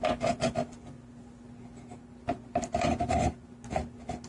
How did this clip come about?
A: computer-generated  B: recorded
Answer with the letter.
B